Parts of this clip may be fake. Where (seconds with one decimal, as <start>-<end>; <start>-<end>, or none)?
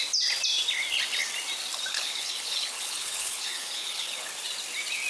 1.9-4.3